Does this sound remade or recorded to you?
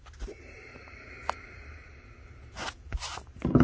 recorded